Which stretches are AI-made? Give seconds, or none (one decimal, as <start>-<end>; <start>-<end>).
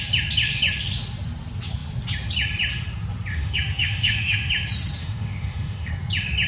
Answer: 3.3-4.5; 5.0-5.9